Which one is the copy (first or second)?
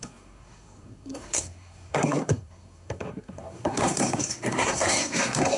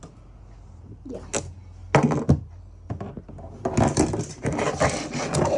first